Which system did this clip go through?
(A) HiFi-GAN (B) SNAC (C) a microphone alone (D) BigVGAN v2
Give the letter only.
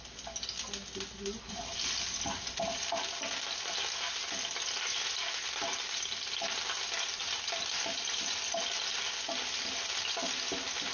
C